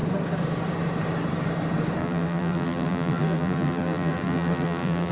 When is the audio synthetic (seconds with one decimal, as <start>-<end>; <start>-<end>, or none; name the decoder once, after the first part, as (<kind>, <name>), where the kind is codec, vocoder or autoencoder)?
2.0-5.1 (vocoder, BigVGAN v2)